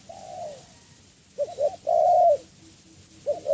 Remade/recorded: recorded